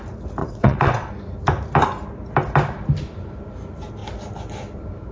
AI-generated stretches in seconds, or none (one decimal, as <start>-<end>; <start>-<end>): 0.4-1.1